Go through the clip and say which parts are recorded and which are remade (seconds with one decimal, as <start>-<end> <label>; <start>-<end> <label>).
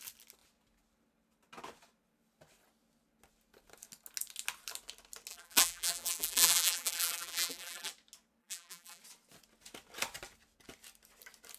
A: 0.0-5.3 recorded; 5.3-7.9 remade; 7.9-8.4 recorded; 8.4-9.0 remade; 9.0-11.6 recorded